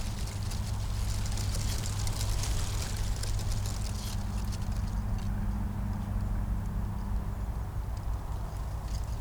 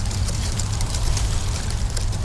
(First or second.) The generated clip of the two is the second